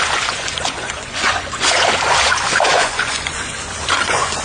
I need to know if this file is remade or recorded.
remade